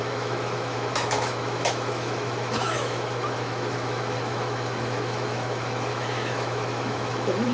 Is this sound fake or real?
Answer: fake